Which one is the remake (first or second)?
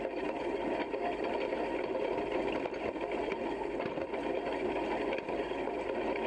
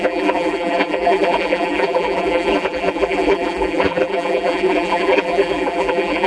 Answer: second